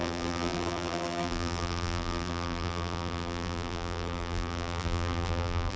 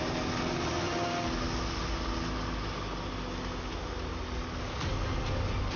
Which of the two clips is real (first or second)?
second